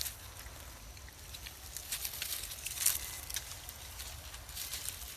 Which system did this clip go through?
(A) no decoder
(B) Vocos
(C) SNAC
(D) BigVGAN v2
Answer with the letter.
A